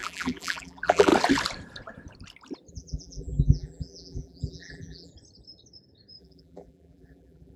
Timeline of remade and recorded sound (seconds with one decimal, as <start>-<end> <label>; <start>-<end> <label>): 0.0-1.1 remade; 1.1-2.7 recorded; 2.7-5.1 remade; 5.1-6.2 recorded; 6.2-7.6 remade